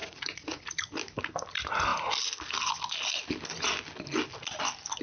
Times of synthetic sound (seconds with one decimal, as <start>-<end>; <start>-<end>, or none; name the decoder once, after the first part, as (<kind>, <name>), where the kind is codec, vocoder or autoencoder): 0.0-0.6 (vocoder, Vocos)